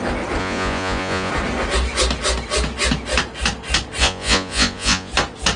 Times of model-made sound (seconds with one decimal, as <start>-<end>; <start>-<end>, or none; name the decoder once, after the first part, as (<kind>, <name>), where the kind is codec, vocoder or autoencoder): 0.4-1.3 (vocoder, Vocos); 4.0-5.1

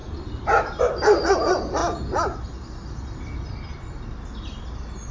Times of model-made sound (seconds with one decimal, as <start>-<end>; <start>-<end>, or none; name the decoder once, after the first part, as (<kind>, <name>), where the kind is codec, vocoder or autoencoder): 0.8-1.8 (vocoder, BigVGAN v2)